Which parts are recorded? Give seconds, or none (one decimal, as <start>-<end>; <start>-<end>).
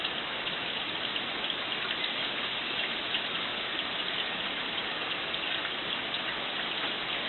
0.0-7.3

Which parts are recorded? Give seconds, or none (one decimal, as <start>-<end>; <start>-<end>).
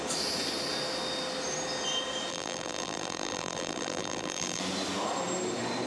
0.0-2.3; 4.6-5.9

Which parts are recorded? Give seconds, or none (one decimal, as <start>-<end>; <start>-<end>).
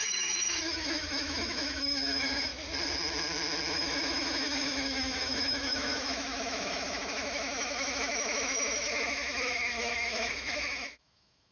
2.5-3.7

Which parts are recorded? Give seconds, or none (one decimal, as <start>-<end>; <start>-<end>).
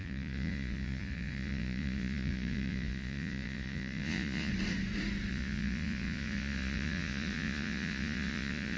4.5-5.3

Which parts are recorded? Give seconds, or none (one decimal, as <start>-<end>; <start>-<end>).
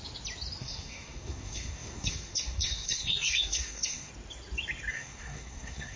0.0-0.6; 4.1-4.9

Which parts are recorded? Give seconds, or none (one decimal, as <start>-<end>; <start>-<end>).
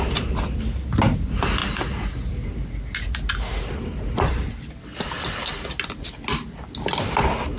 0.0-7.6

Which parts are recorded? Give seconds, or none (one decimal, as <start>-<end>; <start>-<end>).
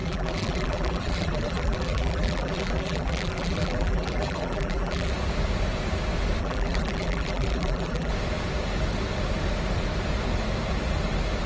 5.1-6.4; 8.1-11.5